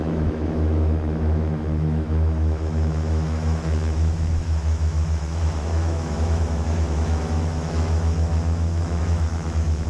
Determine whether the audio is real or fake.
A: fake